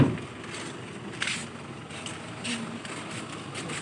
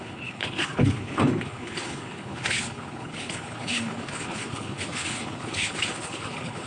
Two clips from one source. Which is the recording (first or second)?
first